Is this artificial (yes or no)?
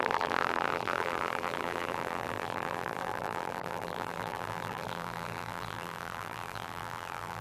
yes